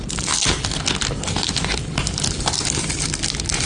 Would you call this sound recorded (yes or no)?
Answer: yes